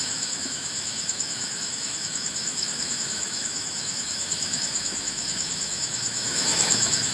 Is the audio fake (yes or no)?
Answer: yes